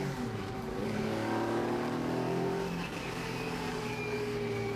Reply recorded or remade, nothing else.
remade